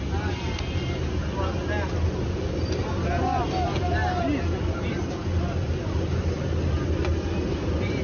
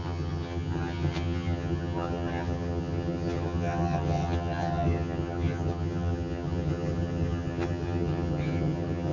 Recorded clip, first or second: first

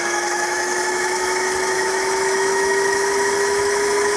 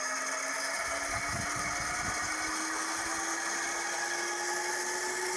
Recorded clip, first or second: second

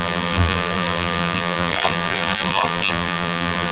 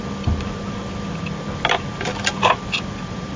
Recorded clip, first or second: second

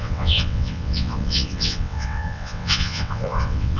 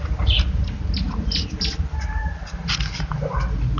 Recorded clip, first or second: second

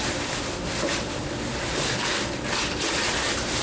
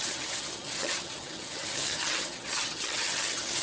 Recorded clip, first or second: first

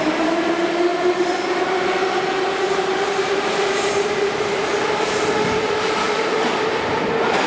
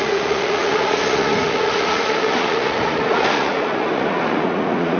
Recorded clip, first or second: first